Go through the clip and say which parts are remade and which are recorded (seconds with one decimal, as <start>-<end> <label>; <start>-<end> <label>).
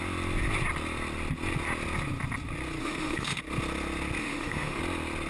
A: 0.0-2.8 recorded; 2.8-3.4 remade; 3.4-4.2 recorded; 4.2-4.8 remade; 4.8-5.3 recorded